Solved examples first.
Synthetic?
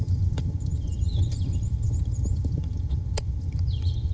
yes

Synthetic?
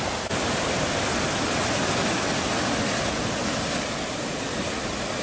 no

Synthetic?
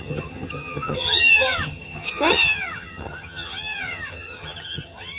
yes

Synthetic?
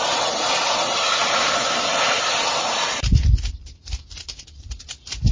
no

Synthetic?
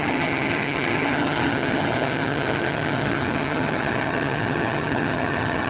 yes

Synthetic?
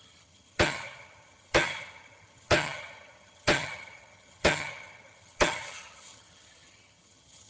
yes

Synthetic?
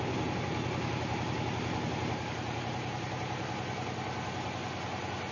no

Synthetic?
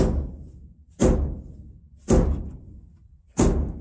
no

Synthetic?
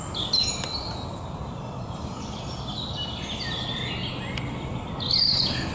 no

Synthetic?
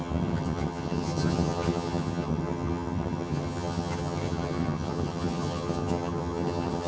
yes